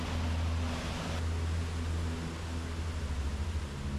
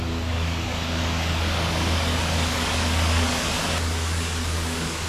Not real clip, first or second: second